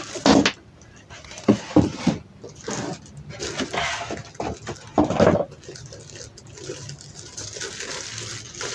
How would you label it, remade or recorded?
recorded